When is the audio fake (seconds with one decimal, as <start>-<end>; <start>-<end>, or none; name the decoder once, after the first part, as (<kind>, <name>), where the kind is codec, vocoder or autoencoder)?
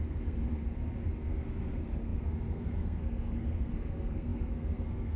0.0-0.6 (codec, SNAC); 1.3-5.2